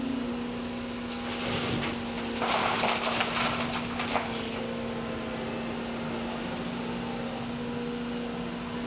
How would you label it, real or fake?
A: real